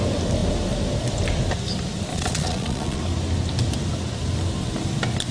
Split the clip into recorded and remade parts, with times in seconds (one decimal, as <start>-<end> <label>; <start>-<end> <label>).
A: 0.0-2.1 recorded; 2.1-3.0 remade; 3.0-5.3 recorded